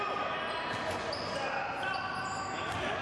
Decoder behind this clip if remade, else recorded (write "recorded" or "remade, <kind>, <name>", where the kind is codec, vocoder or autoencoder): recorded